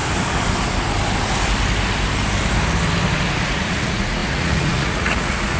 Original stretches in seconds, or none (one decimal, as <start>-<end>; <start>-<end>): 0.0-3.4

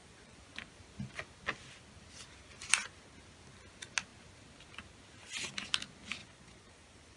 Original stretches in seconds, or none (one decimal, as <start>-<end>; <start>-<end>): 0.5-6.2

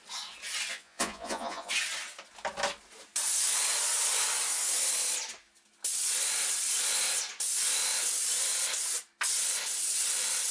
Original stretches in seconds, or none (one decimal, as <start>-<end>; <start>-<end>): 0.0-0.7; 1.7-10.5

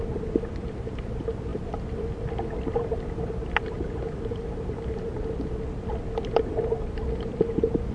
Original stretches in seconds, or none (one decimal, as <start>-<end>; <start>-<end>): 0.0-7.9

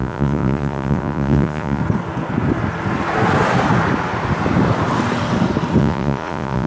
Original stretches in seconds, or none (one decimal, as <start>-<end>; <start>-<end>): 1.8-5.8